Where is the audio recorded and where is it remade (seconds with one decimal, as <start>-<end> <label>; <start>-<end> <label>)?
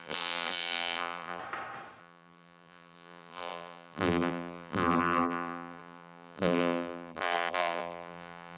0.0-1.4 remade; 1.4-2.0 recorded; 2.0-8.6 remade